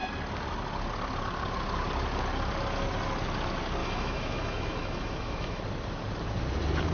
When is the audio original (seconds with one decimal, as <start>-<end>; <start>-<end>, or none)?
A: 0.0-3.8; 5.6-6.9

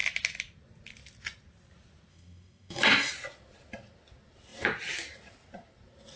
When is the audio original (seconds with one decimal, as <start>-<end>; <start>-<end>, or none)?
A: 0.0-2.1; 3.1-6.2